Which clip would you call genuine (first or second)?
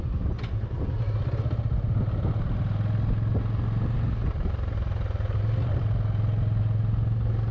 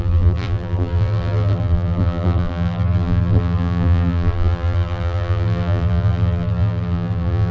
first